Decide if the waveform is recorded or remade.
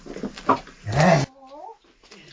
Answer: recorded